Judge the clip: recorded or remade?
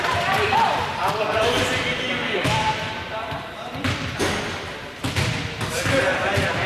remade